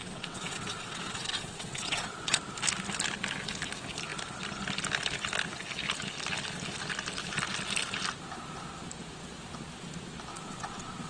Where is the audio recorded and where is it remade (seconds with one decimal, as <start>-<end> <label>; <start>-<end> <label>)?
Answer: 0.0-2.4 remade; 2.4-10.3 recorded; 10.3-11.1 remade